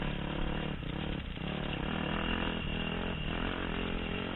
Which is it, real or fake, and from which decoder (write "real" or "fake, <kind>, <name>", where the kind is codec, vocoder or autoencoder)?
real